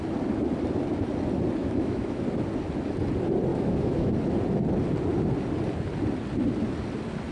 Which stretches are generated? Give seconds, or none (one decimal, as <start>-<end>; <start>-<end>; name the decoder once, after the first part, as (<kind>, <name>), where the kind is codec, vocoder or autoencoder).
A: 1.6-2.2 (autoencoder, DAC-VAE); 3.5-4.1